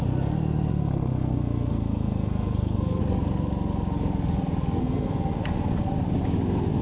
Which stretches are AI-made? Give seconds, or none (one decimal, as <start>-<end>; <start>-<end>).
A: 0.7-3.0; 4.8-5.5